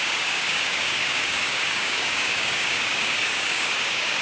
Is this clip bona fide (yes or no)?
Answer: no